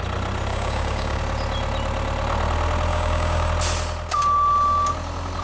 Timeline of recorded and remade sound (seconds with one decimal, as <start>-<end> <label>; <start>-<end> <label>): 0.0-0.5 recorded; 0.5-1.2 remade; 1.2-2.9 recorded; 2.9-3.5 remade; 3.5-5.4 recorded